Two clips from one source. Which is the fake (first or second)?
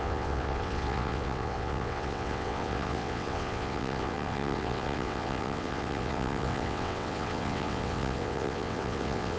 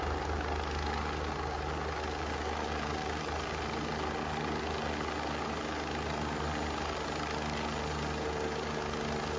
first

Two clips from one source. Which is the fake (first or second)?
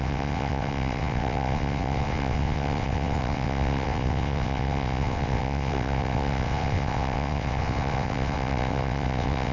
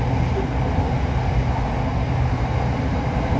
first